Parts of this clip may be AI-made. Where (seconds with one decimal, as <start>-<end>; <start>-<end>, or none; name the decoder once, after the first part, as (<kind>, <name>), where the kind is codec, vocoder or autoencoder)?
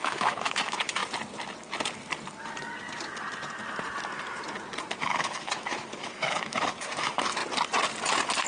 0.0-1.0 (autoencoder, DAC-VAE); 5.0-7.4